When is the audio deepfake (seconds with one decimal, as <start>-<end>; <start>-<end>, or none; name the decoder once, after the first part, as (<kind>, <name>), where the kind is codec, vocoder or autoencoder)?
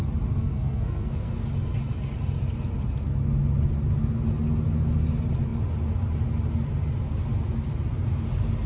0.4-1.5 (codec, SNAC)